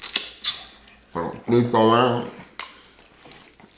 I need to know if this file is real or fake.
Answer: real